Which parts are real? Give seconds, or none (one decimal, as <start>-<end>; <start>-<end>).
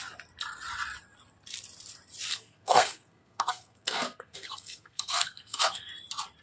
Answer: 0.0-2.3; 5.9-6.4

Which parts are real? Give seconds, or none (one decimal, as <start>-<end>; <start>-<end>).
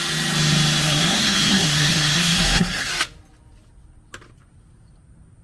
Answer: 0.0-0.8; 2.9-5.4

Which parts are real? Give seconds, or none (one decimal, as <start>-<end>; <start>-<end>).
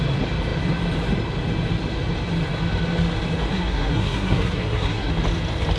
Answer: 0.0-3.5; 5.1-5.8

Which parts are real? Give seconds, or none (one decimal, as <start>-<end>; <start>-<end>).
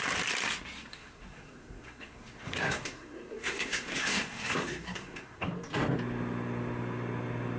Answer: 0.0-0.9; 5.5-7.6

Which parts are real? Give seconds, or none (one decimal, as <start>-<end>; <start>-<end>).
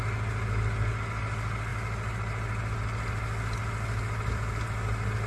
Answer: 0.0-5.3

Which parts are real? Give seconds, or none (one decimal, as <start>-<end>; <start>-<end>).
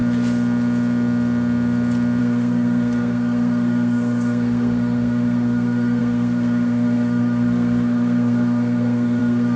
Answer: 0.0-2.2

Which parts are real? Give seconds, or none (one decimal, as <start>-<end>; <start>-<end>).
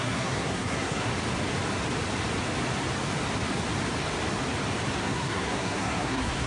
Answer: 1.1-5.0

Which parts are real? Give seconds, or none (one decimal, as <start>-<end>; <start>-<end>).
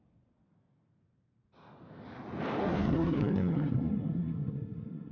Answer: 0.0-2.6